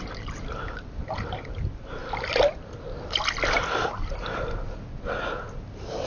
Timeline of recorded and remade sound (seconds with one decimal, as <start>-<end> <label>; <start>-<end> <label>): 0.0-2.0 remade; 2.0-6.1 recorded